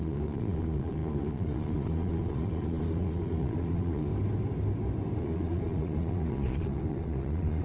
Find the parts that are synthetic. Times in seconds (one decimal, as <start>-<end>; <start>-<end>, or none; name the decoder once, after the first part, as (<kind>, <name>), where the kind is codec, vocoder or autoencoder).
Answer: 0.0-4.1 (vocoder, Vocos); 5.2-7.6